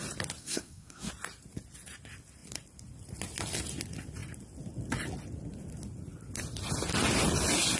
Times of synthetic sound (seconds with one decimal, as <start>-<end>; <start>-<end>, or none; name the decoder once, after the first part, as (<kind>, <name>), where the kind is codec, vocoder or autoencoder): 0.4-1.1 (codec, SNAC)